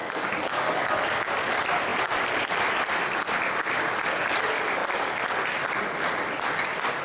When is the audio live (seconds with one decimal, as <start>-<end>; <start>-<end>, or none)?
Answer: 0.9-7.0